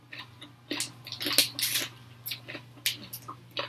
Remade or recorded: recorded